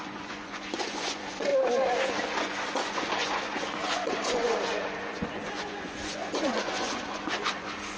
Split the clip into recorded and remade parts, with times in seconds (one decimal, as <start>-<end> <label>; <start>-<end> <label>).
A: 0.0-1.5 remade; 1.5-2.1 recorded; 2.1-8.0 remade